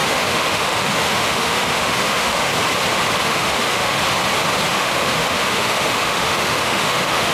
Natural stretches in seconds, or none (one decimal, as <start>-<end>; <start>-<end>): 2.5-3.2; 4.0-4.7

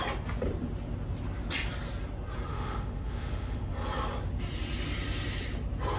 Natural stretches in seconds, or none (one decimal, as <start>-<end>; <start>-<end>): 0.0-2.5; 3.7-6.0

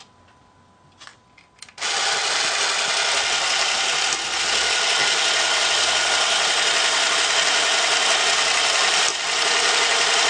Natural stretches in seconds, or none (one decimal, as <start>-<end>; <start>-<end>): 0.0-10.3

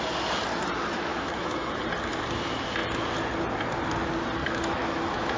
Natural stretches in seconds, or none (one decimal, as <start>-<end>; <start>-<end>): 0.0-1.1; 1.7-4.4

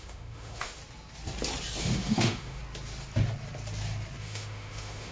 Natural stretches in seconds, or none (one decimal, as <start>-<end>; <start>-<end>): 0.8-1.8; 2.6-4.2

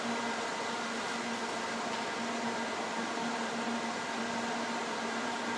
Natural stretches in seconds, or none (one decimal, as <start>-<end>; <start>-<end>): 0.0-5.6